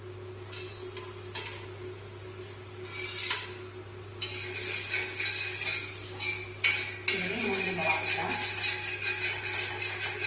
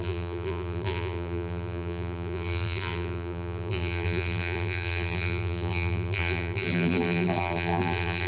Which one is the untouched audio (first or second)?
first